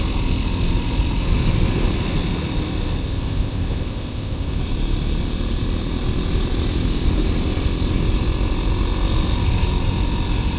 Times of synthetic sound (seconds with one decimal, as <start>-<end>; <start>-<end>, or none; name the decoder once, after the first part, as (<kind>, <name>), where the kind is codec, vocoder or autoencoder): 3.0-4.6 (codec, ZipCodec)